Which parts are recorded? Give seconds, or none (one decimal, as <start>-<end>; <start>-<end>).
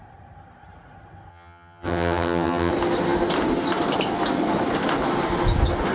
0.0-1.3; 2.7-5.9